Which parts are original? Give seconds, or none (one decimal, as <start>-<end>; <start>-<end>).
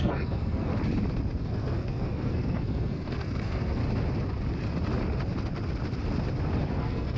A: 0.7-1.4; 3.8-6.7